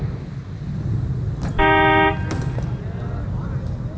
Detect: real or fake real